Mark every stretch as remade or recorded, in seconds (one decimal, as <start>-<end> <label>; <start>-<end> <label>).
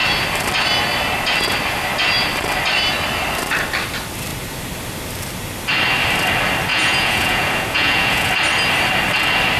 0.0-6.7 recorded; 6.7-8.3 remade; 8.3-9.6 recorded